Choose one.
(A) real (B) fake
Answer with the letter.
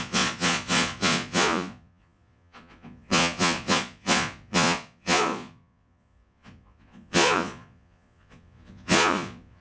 B